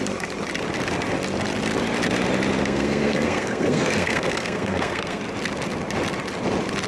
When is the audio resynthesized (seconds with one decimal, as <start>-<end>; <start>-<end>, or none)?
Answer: 2.6-5.2